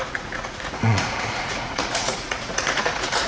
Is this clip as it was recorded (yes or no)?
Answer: no